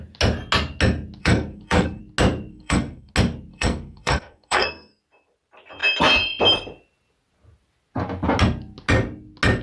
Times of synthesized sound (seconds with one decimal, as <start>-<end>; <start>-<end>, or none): 1.2-2.0; 2.5-3.1; 3.5-5.0